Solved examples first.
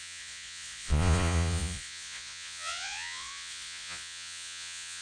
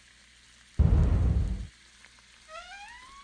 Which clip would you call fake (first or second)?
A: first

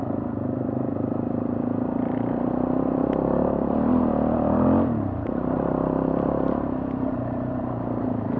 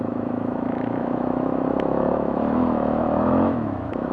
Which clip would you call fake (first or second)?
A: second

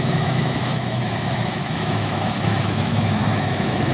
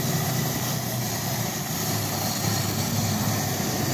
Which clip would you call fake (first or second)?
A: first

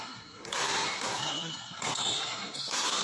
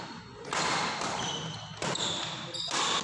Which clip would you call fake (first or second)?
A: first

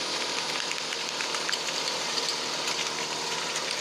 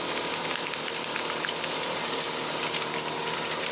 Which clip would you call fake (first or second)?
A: first